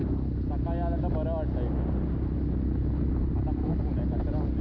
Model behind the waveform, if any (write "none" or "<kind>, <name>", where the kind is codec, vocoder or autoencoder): none